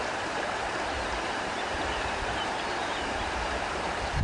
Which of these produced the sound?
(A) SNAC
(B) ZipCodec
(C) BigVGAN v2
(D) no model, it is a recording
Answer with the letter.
C